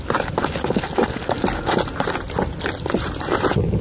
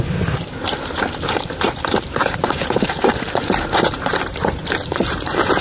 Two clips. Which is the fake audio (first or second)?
second